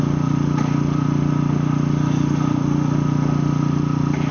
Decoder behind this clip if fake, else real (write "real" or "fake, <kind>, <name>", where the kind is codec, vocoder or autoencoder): real